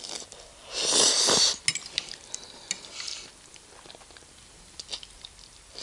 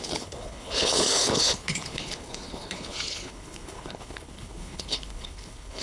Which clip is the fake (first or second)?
second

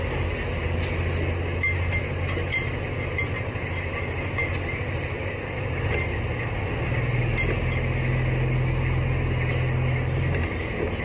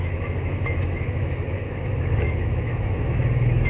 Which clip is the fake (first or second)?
second